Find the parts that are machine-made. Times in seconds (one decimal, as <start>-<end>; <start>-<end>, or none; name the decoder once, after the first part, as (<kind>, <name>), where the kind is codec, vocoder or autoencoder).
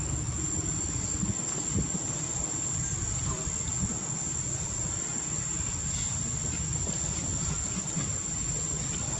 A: none